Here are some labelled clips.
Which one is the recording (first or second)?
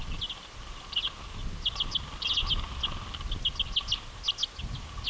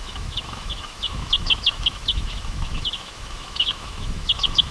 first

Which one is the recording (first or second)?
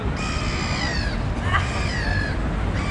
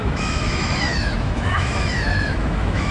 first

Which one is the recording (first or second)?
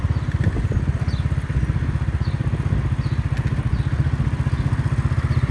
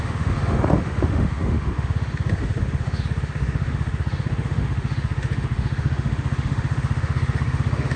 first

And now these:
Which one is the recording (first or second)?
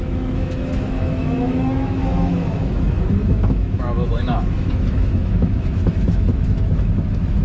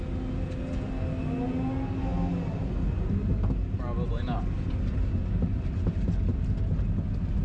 second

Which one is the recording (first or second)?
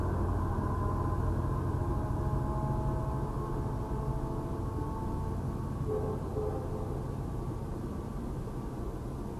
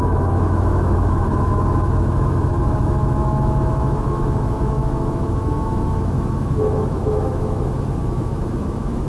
first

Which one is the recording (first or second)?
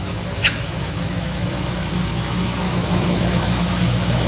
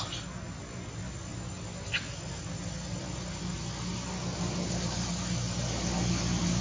second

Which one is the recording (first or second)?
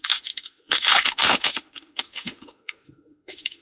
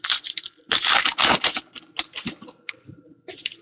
second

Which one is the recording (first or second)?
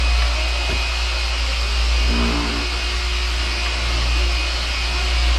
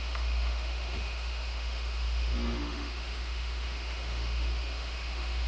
first